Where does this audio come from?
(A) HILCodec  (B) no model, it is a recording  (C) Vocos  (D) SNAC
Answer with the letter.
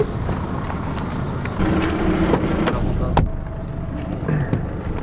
B